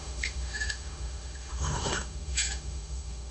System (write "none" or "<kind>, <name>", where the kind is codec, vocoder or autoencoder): autoencoder, DAC-VAE